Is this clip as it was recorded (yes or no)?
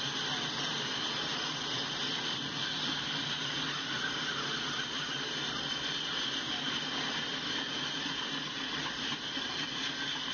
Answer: yes